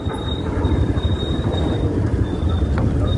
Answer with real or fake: real